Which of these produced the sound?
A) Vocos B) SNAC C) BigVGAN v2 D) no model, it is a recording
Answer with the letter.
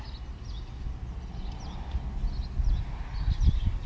D